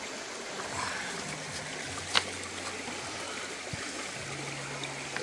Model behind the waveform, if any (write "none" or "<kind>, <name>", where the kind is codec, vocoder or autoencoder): none